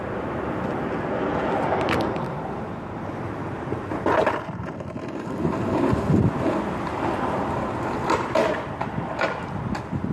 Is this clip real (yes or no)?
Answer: yes